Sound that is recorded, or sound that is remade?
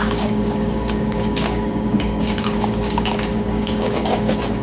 remade